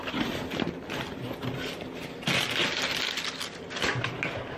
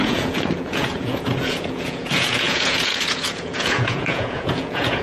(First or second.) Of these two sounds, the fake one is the second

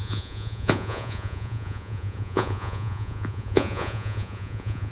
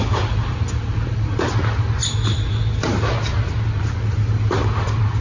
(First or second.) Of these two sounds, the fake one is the first